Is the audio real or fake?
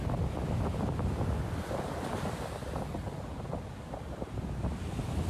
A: real